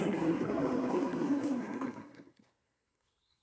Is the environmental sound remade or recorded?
remade